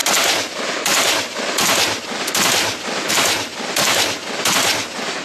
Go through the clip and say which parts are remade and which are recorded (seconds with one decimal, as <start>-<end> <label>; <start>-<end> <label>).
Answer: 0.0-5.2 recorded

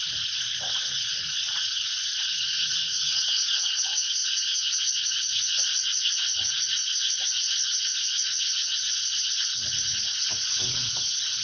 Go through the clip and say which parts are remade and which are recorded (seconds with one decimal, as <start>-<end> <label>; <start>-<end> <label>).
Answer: 0.0-4.2 remade; 4.2-4.8 recorded; 4.8-11.4 remade

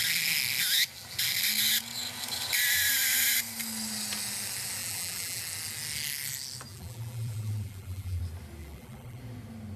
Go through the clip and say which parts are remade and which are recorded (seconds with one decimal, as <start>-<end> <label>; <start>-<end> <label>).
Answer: 0.0-4.8 recorded; 4.8-5.4 remade; 5.4-6.7 recorded; 6.7-8.2 remade; 8.2-8.6 recorded; 8.6-9.2 remade; 9.2-9.8 recorded

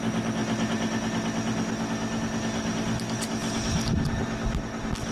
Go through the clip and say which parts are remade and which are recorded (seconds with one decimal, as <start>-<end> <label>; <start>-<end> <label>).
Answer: 0.0-5.1 recorded

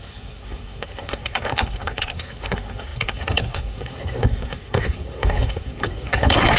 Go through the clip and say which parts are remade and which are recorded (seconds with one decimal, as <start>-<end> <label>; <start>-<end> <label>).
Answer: 0.0-6.6 remade

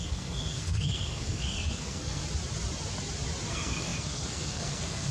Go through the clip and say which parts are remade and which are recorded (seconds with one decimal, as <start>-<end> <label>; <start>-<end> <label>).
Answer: 0.0-2.2 remade; 2.2-3.5 recorded; 3.5-5.1 remade